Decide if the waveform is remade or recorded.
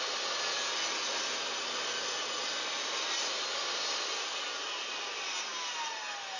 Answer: recorded